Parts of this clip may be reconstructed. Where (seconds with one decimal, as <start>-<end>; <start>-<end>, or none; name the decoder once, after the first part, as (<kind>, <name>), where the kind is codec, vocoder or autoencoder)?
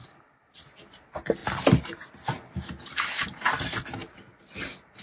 none